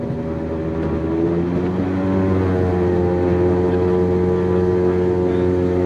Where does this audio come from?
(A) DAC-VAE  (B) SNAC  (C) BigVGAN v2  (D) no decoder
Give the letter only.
D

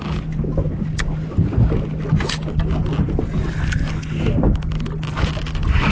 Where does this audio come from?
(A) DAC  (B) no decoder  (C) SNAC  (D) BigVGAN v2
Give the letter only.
B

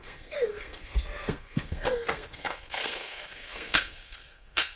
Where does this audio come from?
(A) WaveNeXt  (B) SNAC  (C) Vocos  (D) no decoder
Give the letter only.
B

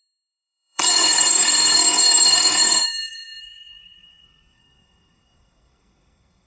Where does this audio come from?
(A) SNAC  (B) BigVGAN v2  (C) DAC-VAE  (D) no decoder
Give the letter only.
A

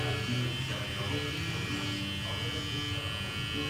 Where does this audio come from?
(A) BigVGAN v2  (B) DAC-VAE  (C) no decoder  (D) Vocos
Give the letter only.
C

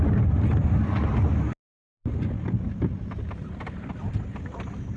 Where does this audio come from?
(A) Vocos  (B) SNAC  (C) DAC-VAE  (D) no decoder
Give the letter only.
D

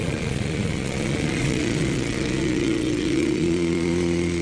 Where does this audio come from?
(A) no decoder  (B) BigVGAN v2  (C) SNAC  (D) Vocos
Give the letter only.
D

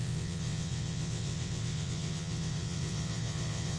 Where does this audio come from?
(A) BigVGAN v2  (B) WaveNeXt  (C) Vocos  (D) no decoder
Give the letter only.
B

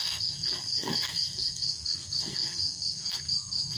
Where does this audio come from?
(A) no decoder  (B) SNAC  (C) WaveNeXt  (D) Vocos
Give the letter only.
B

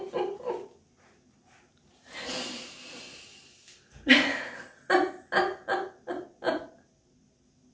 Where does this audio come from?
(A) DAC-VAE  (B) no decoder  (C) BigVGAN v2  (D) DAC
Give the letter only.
B